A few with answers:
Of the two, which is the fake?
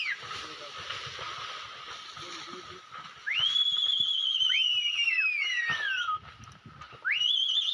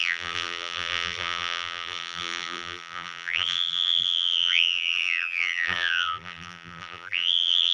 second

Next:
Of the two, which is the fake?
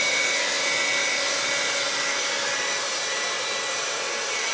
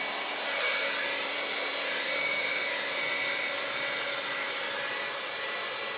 second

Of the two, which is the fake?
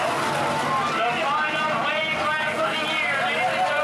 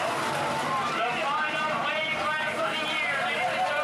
second